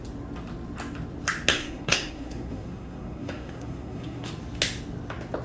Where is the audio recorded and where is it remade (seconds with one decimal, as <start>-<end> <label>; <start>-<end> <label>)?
0.0-1.5 recorded; 1.5-4.3 remade; 4.3-5.4 recorded